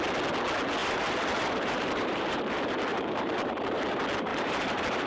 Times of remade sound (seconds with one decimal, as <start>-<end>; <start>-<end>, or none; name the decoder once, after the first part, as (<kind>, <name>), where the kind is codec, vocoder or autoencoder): 0.8-2.5 (vocoder, BigVGAN v2); 2.9-3.8; 4.3-5.1